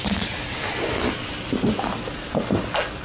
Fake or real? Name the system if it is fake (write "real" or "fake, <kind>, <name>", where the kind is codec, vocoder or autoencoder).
real